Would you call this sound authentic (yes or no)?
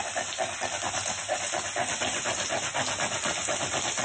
yes